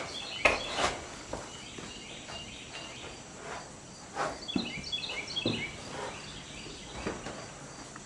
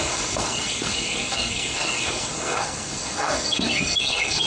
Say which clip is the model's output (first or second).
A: second